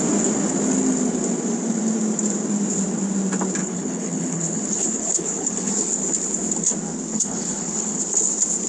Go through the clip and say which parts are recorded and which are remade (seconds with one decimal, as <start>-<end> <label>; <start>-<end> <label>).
0.0-3.6 recorded; 3.6-5.7 remade; 5.7-7.1 recorded; 7.1-8.0 remade; 8.0-8.7 recorded